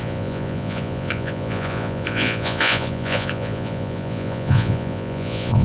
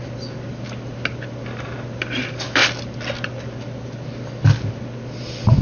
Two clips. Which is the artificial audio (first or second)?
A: first